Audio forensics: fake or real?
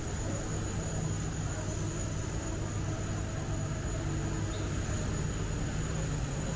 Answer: real